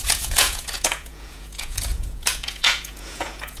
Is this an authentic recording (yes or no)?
no